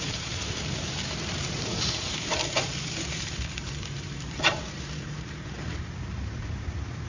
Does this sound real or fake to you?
fake